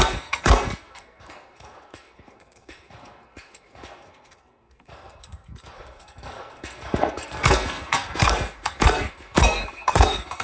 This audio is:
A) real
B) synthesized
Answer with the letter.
B